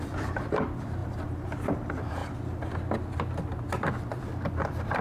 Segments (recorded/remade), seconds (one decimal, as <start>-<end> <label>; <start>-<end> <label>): 0.0-2.2 remade; 2.2-3.9 recorded; 3.9-5.0 remade